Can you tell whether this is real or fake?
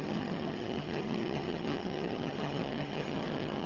fake